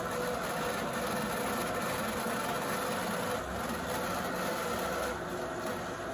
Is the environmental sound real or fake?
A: real